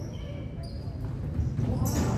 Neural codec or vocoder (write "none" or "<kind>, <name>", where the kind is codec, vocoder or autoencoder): none